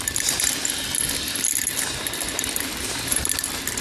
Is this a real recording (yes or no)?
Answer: yes